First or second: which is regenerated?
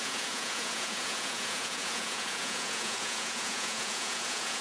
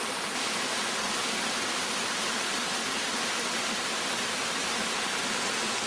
first